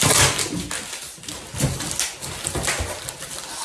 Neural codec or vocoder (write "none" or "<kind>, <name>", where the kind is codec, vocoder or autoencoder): none